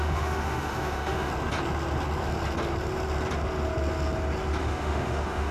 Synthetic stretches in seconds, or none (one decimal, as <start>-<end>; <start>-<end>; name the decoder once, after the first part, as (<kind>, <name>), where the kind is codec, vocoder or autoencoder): 0.0-1.3 (autoencoder, DAC-VAE); 4.6-5.5